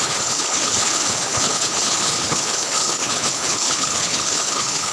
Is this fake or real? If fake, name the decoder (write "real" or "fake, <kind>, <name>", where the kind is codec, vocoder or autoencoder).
fake, codec, HILCodec